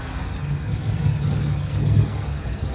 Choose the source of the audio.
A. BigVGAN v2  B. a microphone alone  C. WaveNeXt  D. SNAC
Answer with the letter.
D